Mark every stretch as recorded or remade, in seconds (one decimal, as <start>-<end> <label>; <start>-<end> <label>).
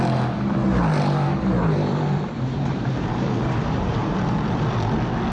0.0-1.3 recorded; 1.3-4.2 remade; 4.2-5.3 recorded